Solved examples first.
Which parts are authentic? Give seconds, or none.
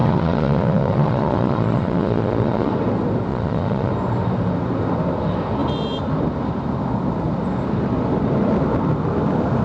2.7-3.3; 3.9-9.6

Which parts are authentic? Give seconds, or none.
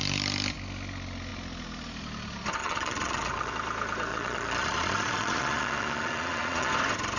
0.0-2.6; 3.5-4.1; 6.7-7.2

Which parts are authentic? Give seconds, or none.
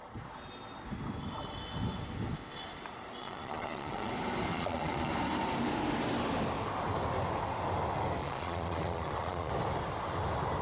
0.0-3.2; 4.1-4.5; 5.1-8.2; 9.5-10.6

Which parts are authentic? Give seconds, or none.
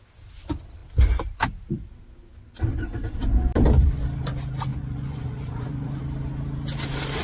0.0-4.7; 6.0-7.2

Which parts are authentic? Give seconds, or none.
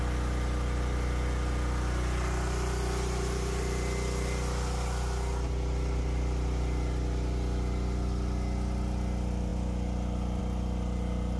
0.0-11.4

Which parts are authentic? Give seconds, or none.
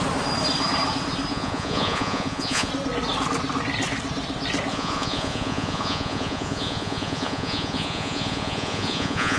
0.0-1.3; 2.7-4.7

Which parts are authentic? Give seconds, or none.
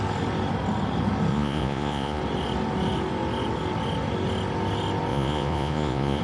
0.0-1.3; 2.2-5.1